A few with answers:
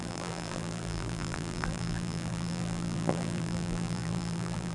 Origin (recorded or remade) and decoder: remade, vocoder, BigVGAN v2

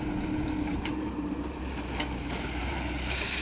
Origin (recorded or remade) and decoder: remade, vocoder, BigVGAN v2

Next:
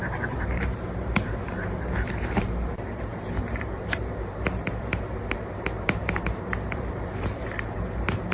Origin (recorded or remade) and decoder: remade, vocoder, BigVGAN v2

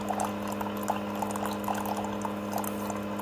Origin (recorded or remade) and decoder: recorded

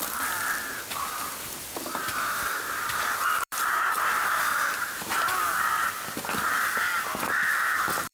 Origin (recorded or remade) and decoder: remade, vocoder, BigVGAN v2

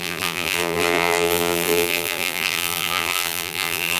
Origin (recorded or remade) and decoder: remade, vocoder, BigVGAN v2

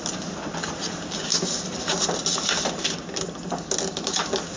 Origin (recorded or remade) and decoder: recorded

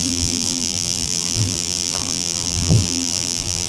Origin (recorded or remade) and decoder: remade, vocoder, BigVGAN v2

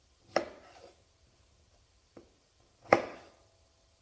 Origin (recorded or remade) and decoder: recorded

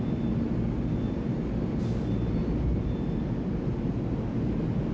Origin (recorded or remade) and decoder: recorded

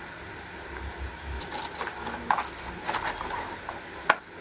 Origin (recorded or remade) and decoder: recorded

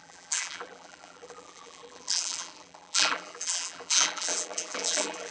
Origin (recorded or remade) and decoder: remade, vocoder, BigVGAN v2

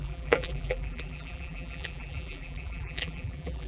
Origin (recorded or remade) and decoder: remade, vocoder, BigVGAN v2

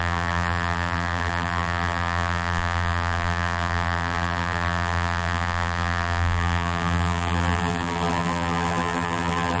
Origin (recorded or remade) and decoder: remade, vocoder, BigVGAN v2